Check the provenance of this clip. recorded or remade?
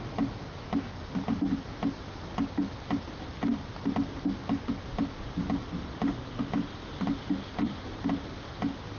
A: recorded